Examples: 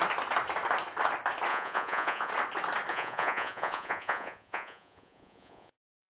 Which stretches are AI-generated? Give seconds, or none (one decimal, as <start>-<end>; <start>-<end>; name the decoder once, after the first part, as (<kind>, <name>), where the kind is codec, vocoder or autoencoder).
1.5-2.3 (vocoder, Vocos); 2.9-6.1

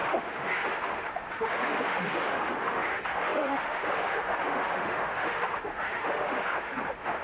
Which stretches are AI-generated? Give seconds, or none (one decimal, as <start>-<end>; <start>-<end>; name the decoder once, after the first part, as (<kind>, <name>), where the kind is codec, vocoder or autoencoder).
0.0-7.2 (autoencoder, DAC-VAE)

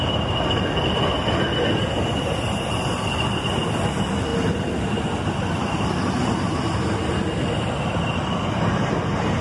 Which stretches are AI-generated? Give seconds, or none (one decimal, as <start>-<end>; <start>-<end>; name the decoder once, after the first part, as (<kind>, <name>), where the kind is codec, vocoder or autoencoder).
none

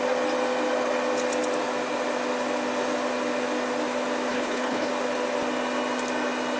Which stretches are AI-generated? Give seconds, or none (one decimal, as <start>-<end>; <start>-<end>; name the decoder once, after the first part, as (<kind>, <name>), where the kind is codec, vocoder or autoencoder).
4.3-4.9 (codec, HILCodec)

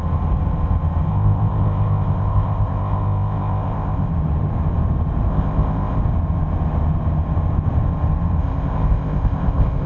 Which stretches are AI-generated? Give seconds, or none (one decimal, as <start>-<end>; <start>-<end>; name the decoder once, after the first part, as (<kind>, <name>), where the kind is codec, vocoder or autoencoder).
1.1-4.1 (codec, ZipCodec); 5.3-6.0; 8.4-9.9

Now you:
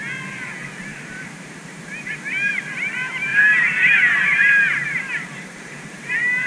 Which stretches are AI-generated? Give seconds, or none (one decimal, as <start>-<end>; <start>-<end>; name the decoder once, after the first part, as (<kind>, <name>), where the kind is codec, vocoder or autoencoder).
0.9-1.8 (vocoder, BigVGAN v2); 3.3-6.5

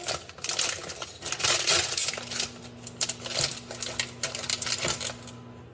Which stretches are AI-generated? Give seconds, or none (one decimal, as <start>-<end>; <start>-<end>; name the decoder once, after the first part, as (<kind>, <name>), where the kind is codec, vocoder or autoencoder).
none

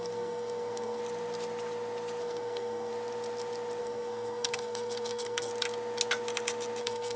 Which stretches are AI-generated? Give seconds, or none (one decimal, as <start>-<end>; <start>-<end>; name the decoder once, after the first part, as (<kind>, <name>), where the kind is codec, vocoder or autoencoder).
0.0-1.0 (codec, SNAC); 2.2-2.9; 3.8-5.5; 6.8-7.2